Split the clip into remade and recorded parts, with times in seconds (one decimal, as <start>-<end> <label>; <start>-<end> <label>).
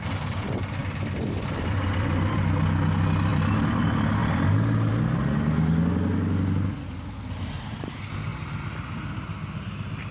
0.0-0.8 recorded; 0.8-2.4 remade; 2.4-3.3 recorded; 3.3-3.8 remade; 3.8-10.1 recorded